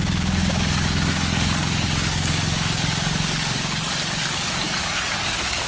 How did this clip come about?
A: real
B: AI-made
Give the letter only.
B